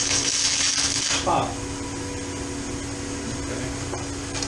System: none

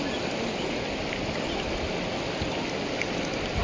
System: none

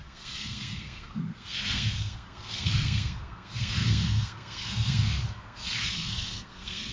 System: codec, SNAC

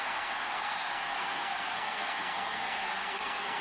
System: codec, SNAC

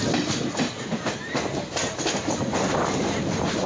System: none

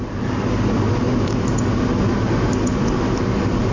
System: none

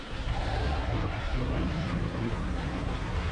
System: codec, SNAC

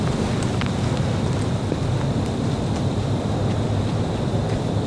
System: none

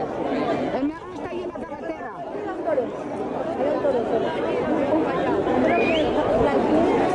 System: none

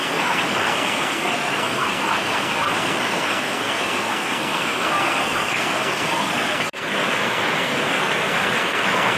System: codec, SNAC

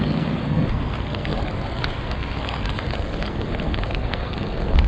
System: codec, SNAC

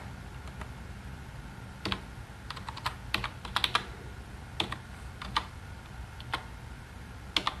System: none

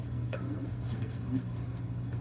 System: codec, SNAC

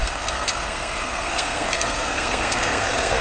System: codec, SNAC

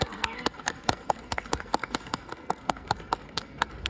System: codec, SNAC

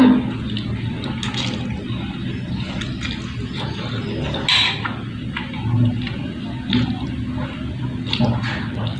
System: none